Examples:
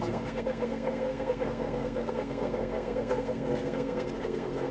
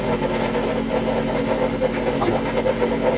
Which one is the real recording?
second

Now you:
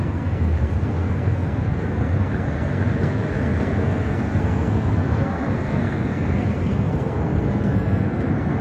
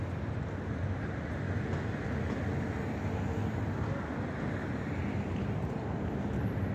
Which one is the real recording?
second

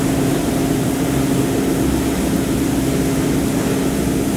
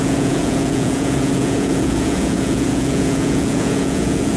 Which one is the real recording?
first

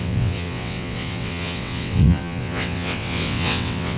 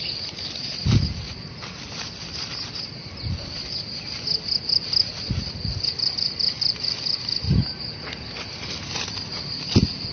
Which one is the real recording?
second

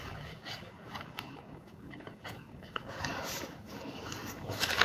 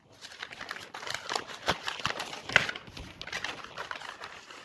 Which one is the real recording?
second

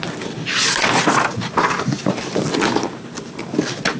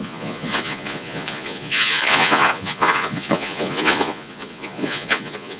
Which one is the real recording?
first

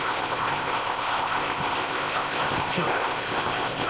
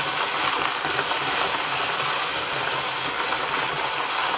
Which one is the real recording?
second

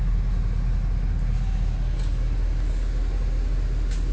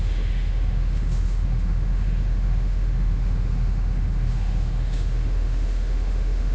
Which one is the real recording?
first